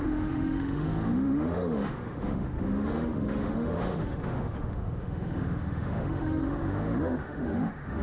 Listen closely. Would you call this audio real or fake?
fake